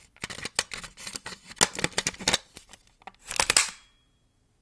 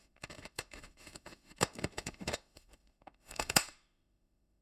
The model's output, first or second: second